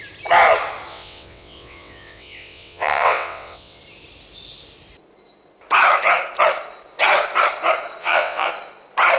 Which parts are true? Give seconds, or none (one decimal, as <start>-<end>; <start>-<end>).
0.0-0.9; 3.8-8.0; 8.5-9.2